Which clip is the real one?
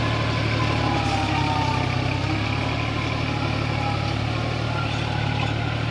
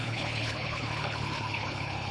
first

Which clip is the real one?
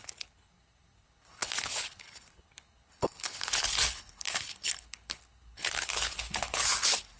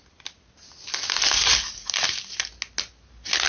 second